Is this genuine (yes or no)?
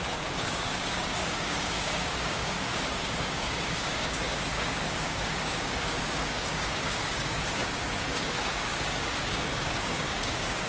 no